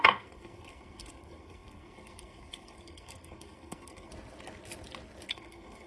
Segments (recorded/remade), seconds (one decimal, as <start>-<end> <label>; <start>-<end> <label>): 0.0-4.1 remade; 4.1-5.3 recorded; 5.3-5.9 remade